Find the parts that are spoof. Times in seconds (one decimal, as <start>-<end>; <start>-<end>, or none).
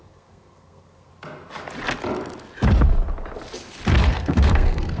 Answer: 0.0-1.1; 4.1-5.0